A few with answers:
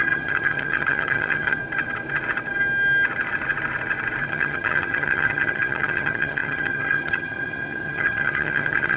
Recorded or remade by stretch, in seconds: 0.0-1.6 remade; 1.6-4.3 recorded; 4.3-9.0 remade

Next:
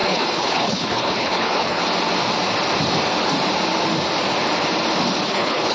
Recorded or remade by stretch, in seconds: 0.0-1.8 remade; 1.8-5.2 recorded; 5.2-5.7 remade

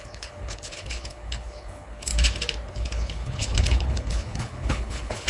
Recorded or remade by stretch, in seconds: 0.0-2.1 remade; 2.1-2.7 recorded; 2.7-5.3 remade

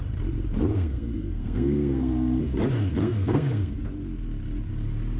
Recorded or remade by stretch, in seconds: 0.0-0.7 recorded; 0.7-2.4 remade; 2.4-3.0 recorded; 3.0-3.7 remade; 3.7-5.2 recorded

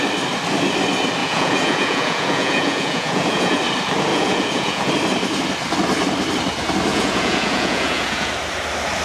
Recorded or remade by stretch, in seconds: 0.0-1.2 recorded; 1.2-3.6 remade; 3.6-4.1 recorded; 4.1-4.9 remade; 4.9-6.9 recorded; 6.9-8.3 remade; 8.3-9.0 recorded